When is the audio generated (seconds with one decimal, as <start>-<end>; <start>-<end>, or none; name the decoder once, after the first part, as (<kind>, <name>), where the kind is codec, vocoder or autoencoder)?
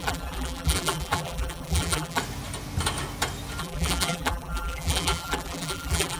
0.0-2.2 (vocoder, BigVGAN v2); 3.6-6.2